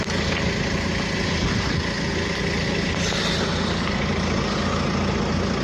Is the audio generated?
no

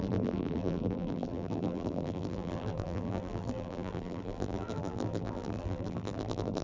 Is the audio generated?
yes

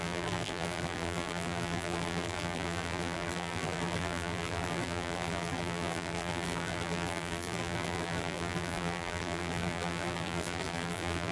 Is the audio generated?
yes